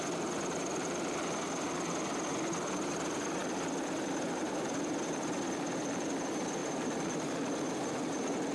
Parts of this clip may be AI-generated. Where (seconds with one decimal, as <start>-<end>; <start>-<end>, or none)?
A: 0.6-1.1; 6.6-7.3